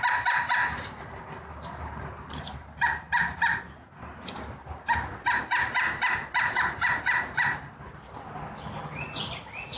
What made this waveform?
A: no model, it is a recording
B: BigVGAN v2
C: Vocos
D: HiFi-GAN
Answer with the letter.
A